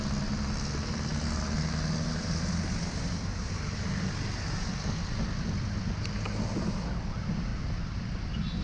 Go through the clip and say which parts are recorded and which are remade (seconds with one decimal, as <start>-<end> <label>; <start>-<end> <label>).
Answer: 0.0-8.6 recorded